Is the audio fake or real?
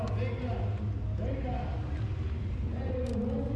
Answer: real